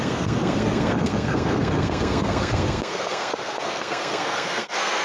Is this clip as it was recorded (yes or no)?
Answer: no